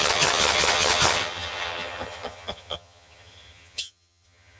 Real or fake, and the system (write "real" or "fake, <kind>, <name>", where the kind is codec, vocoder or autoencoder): fake, vocoder, HiFi-GAN